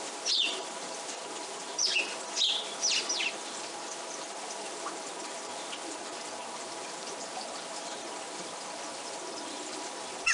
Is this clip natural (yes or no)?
yes